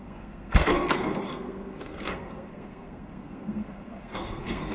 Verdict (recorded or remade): remade